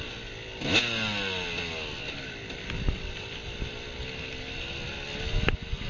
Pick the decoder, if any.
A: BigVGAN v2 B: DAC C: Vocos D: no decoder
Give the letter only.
D